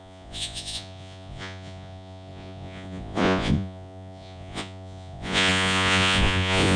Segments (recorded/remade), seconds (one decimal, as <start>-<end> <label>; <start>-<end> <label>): 0.0-6.8 remade